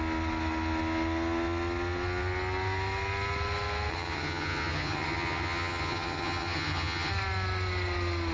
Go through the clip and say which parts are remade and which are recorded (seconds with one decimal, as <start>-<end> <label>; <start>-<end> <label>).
0.0-3.9 recorded; 3.9-7.1 remade; 7.1-8.3 recorded